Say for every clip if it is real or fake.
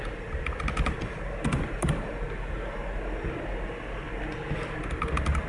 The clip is real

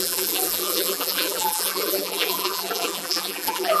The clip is fake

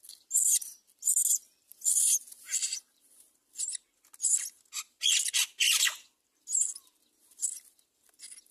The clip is real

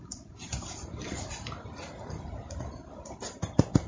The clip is fake